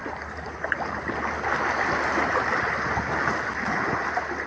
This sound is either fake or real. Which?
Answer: real